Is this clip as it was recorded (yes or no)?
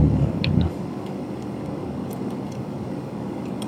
no